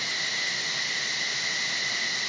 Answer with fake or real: real